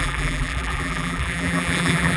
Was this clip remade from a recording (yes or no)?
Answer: yes